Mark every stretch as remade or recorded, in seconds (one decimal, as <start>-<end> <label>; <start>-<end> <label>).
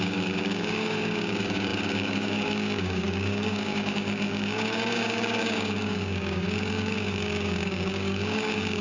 0.0-8.8 remade